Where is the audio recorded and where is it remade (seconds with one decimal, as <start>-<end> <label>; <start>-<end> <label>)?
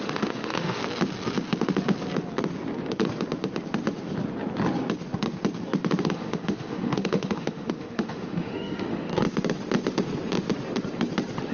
0.0-0.8 remade; 0.8-6.0 recorded; 6.0-9.1 remade; 9.1-11.5 recorded